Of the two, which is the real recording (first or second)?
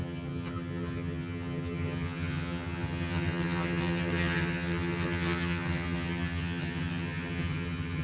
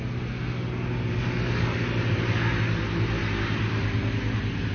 second